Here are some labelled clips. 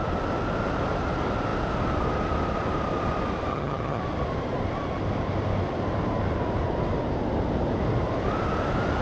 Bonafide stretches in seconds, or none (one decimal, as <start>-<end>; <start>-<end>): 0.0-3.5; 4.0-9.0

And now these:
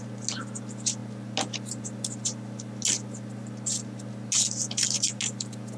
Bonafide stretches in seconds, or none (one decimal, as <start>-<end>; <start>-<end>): 0.0-5.8

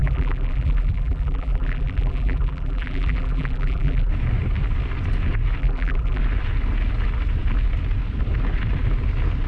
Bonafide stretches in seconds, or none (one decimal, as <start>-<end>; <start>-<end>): 4.1-5.6; 6.2-9.5

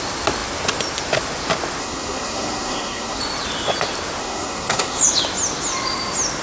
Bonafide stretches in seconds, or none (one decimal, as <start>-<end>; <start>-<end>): 0.0-1.8; 3.2-4.2; 5.0-6.4

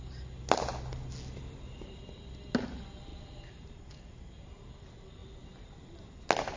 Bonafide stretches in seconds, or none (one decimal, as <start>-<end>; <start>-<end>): 0.0-3.1; 4.7-6.6